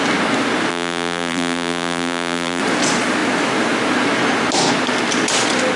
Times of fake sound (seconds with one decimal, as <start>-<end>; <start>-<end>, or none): 0.7-2.6

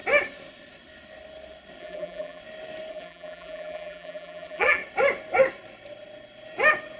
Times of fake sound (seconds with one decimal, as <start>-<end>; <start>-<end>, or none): 1.8-2.4; 2.9-4.8

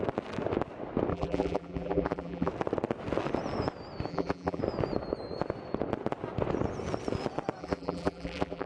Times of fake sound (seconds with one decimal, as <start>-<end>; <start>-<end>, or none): 1.1-2.5; 4.1-4.6; 7.6-8.7

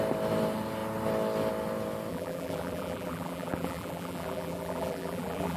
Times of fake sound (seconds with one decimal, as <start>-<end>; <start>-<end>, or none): 2.1-5.6

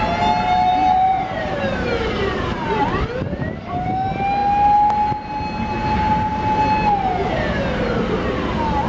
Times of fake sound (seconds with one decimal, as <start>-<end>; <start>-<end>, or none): 0.7-2.8

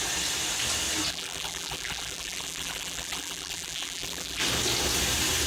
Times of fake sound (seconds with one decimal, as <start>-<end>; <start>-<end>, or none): 1.1-4.4

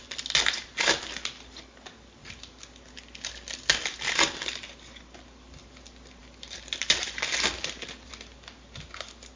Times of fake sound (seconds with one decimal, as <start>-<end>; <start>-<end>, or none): 6.2-8.1